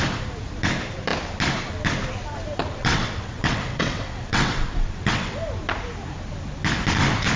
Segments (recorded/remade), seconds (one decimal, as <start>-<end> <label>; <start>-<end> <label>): 0.0-2.8 recorded; 2.8-5.4 remade; 5.4-7.4 recorded